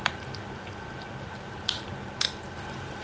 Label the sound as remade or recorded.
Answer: recorded